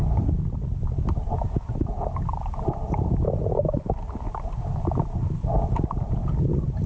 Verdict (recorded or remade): recorded